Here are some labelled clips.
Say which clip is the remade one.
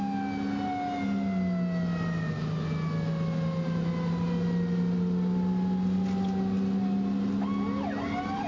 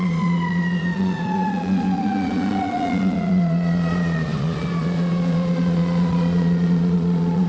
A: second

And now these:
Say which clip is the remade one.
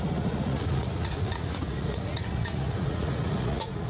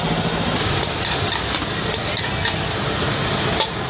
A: first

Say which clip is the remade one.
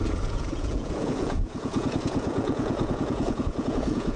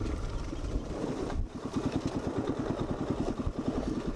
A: first